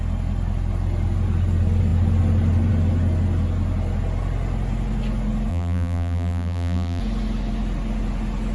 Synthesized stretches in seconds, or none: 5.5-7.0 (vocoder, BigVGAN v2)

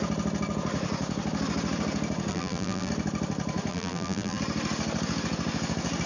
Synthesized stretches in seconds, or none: 2.3-2.9 (vocoder, BigVGAN v2); 3.7-4.4